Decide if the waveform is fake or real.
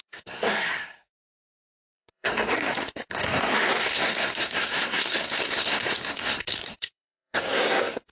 fake